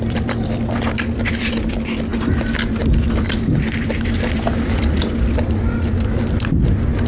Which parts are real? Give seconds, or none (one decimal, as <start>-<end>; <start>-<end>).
0.0-7.1